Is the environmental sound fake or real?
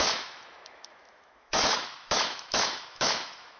fake